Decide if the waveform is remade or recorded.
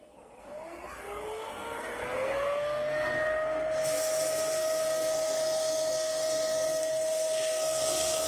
remade